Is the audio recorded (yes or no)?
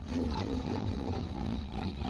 no